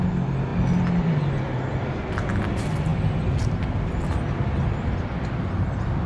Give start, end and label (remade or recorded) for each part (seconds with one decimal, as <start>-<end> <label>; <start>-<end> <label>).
0.0-6.1 recorded